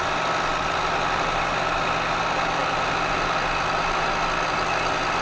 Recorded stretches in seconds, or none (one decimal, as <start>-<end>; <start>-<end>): 0.0-5.2